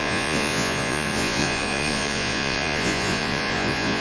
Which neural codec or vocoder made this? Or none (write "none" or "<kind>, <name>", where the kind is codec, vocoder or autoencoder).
vocoder, Vocos